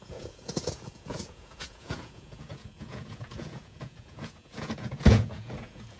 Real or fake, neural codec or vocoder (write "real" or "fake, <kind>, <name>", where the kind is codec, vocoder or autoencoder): fake, vocoder, Vocos